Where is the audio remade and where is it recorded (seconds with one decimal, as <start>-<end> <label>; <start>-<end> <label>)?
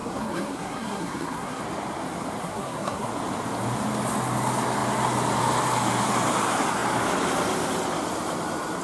0.0-1.6 remade; 1.6-2.4 recorded; 2.4-3.1 remade; 3.1-8.8 recorded